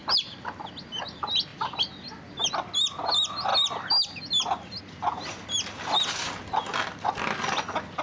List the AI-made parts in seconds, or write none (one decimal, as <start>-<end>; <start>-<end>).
none